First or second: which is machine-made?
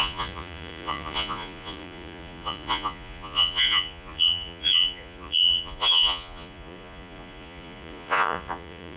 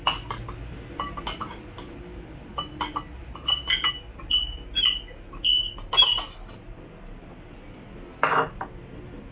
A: first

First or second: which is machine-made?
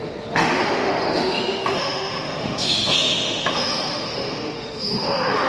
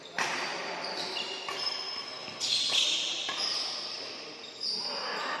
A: first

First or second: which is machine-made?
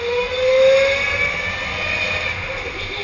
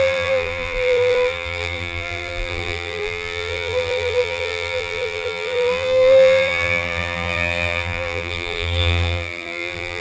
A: second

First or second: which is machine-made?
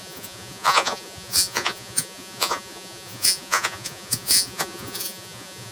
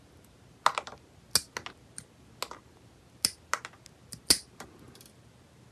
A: first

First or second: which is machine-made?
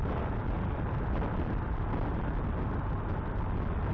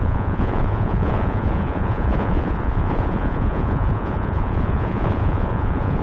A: second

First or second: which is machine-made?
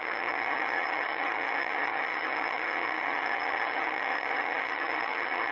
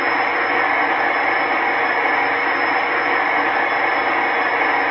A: first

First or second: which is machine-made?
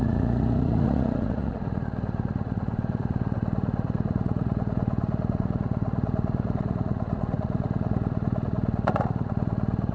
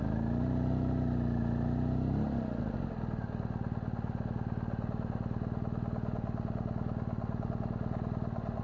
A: first